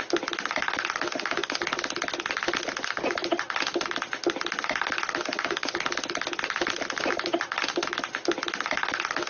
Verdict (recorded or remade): recorded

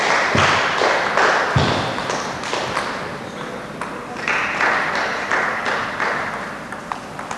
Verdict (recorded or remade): recorded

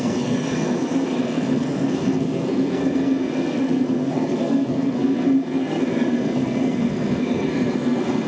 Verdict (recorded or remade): remade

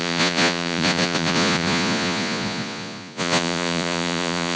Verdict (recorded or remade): remade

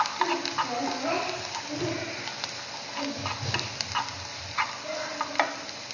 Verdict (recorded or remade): recorded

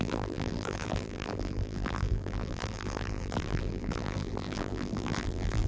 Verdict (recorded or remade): remade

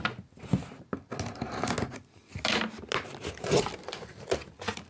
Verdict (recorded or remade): recorded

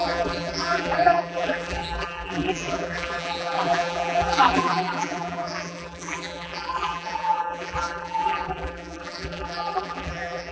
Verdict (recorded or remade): remade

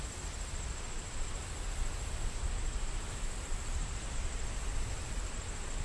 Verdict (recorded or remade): remade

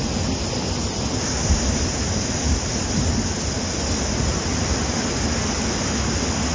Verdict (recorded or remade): recorded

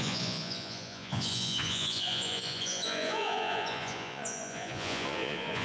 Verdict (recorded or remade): remade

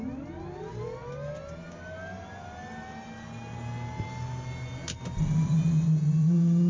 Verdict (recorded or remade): recorded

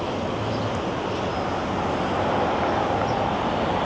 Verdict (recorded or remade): recorded